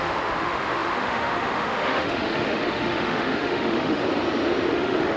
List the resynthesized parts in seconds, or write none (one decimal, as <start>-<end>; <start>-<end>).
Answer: 0.0-4.0; 4.7-5.2

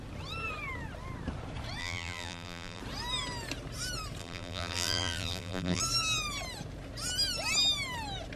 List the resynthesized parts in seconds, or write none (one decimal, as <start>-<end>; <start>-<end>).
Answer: 1.8-2.8; 4.2-5.8